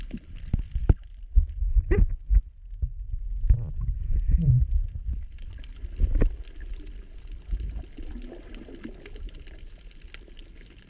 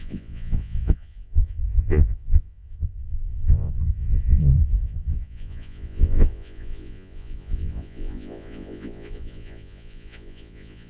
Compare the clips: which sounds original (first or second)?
first